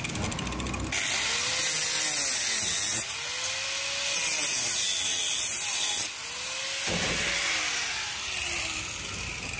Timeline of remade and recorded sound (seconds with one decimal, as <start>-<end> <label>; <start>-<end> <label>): 0.0-9.6 recorded